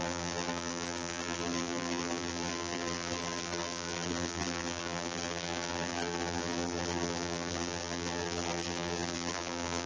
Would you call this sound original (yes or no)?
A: no